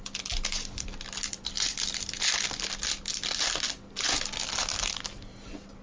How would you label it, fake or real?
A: real